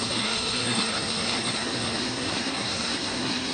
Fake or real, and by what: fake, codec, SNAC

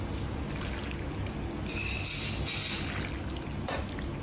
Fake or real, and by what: real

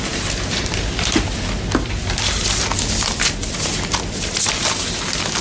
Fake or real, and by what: real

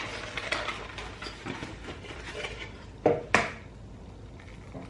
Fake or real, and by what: real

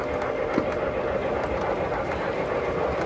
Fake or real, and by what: real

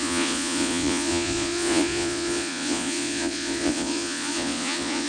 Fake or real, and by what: fake, vocoder, Vocos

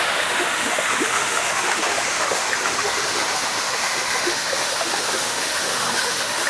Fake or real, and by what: fake, autoencoder, DAC-VAE